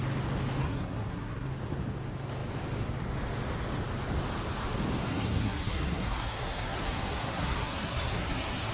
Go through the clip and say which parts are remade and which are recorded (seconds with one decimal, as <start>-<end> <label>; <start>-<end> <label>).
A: 0.0-0.6 recorded; 0.6-1.5 remade; 1.5-5.1 recorded; 5.1-8.7 remade